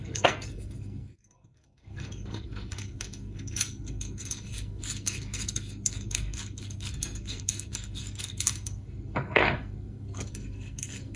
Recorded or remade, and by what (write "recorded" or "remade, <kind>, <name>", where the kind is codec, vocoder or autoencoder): remade, codec, SNAC